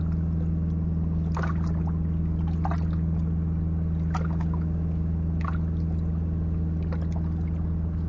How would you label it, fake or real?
real